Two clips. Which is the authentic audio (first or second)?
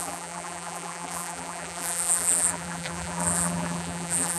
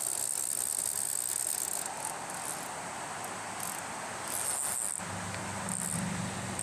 second